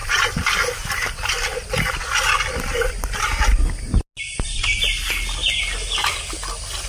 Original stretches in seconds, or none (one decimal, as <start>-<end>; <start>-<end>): 0.6-6.9